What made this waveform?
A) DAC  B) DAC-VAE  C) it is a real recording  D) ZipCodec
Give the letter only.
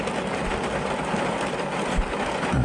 C